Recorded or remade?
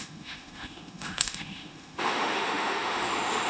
remade